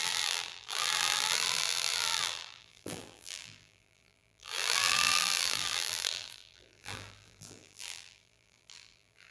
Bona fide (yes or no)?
no